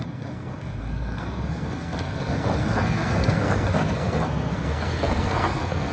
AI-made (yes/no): yes